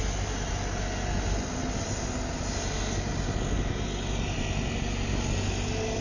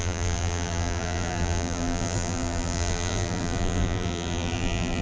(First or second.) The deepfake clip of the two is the second